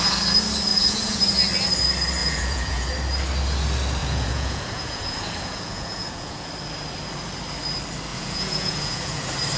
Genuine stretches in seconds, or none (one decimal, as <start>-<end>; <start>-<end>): 0.0-0.7; 1.2-2.2; 2.9-4.0; 6.5-8.1; 9.2-9.6